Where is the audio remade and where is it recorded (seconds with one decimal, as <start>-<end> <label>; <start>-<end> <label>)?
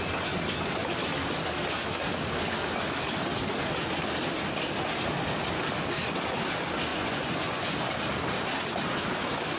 0.0-6.9 recorded; 6.9-7.7 remade; 7.7-9.6 recorded